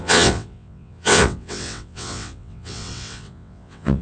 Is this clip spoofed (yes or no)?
yes